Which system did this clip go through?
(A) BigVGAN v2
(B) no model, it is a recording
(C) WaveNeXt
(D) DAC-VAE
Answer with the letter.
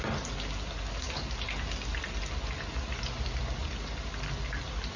B